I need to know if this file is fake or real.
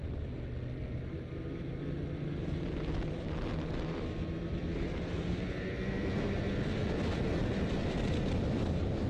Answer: real